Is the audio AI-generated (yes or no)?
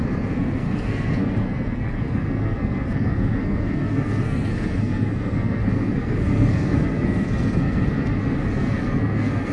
yes